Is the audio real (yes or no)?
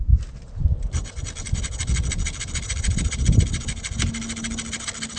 yes